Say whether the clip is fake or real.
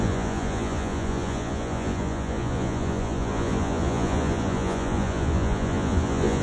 fake